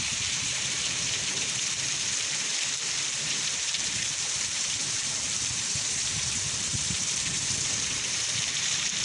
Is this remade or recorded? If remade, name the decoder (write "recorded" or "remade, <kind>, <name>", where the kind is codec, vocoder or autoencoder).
remade, vocoder, BigVGAN v2